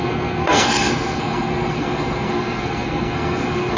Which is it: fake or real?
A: fake